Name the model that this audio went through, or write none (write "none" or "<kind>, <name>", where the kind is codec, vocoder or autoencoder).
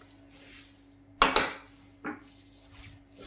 none